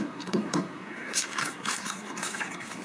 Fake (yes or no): yes